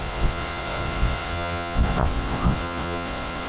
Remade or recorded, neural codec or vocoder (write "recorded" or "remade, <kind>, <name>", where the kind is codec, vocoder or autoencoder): remade, vocoder, Vocos